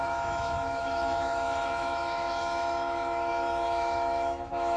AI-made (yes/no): yes